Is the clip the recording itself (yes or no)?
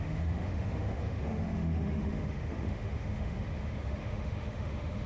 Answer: no